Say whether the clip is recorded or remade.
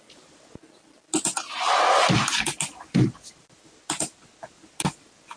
recorded